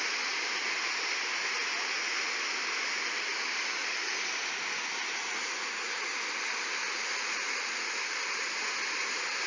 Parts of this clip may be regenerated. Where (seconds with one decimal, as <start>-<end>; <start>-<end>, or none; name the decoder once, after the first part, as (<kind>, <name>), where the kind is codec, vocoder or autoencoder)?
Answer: 3.8-4.5 (vocoder, Vocos); 5.2-6.1; 7.1-7.9